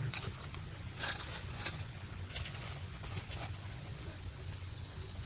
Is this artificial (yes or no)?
yes